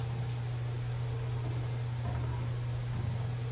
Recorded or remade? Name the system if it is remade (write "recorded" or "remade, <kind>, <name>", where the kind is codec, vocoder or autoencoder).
recorded